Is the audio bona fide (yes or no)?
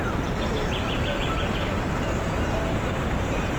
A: no